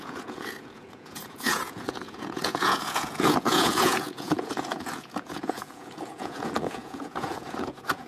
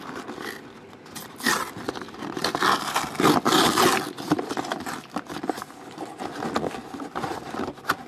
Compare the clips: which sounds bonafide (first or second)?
second